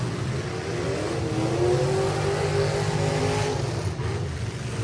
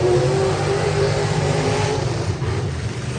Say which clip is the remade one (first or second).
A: second